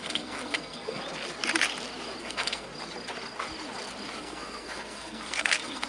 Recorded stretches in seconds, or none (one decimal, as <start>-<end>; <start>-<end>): 1.0-2.2; 2.7-4.2